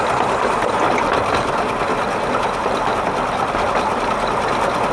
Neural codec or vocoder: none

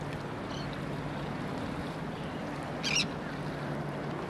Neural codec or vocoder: none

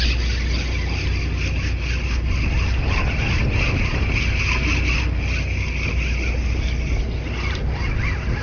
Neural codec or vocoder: none